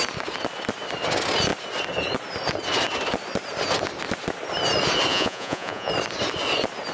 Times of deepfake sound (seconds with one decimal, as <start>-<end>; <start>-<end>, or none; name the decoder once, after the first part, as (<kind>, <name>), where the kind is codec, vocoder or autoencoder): 5.1-5.9 (vocoder, Vocos)